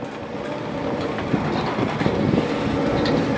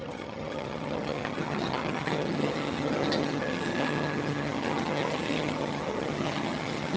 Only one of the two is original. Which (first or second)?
first